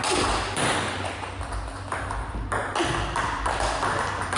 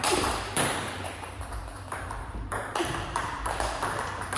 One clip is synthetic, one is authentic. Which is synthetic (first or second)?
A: second